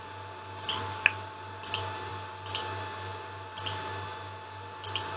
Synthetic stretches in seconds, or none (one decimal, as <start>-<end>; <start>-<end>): none